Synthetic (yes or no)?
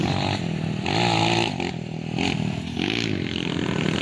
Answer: no